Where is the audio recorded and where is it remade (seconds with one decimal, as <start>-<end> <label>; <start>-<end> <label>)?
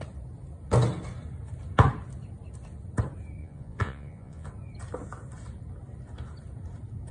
0.0-3.4 recorded; 3.4-4.5 remade; 4.5-7.1 recorded